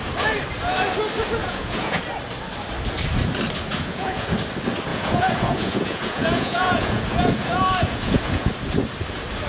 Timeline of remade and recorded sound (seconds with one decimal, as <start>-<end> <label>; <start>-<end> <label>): 0.0-1.4 recorded; 1.4-2.0 remade; 2.0-3.7 recorded; 3.7-4.3 remade; 4.3-4.9 recorded; 4.9-8.5 remade; 8.5-9.5 recorded